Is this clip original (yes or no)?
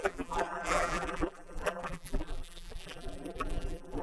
no